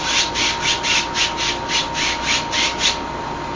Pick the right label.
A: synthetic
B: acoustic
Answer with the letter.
B